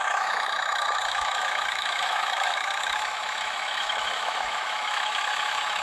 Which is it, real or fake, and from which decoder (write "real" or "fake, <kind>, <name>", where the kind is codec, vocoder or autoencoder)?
fake, autoencoder, DAC-VAE